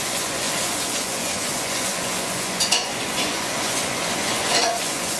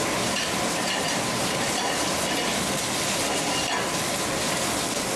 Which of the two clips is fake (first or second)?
first